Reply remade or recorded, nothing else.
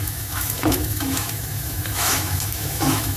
remade